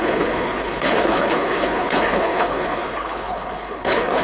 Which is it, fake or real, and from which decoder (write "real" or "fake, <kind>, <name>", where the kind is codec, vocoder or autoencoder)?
fake, codec, HILCodec